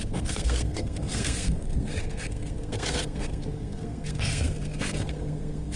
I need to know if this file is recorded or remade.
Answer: remade